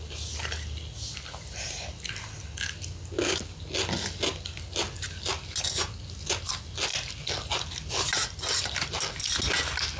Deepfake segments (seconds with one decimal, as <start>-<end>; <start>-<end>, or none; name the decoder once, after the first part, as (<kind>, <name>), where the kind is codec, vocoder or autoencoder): none

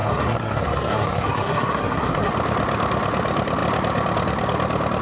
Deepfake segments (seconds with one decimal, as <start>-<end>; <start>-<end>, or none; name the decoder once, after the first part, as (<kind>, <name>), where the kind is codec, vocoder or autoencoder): 0.0-2.3 (codec, SNAC)

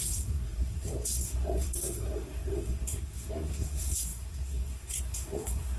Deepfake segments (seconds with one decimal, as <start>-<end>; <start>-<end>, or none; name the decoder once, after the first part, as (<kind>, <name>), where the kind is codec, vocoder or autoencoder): 0.0-5.8 (codec, SNAC)

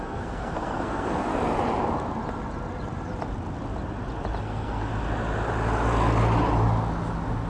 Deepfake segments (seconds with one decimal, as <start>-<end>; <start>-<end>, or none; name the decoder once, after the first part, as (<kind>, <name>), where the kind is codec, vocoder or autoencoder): 0.0-1.3 (codec, SNAC); 4.4-4.9

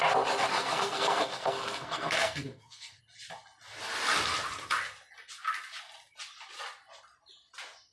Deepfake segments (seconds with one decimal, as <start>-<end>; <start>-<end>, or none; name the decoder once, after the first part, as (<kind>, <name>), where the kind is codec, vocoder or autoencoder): 0.5-3.0 (codec, SNAC)

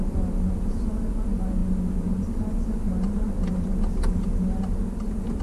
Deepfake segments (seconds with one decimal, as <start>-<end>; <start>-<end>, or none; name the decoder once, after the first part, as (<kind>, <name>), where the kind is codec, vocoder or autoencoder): none